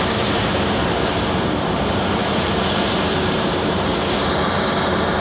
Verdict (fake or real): fake